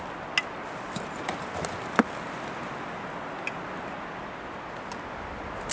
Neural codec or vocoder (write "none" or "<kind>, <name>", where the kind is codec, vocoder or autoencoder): none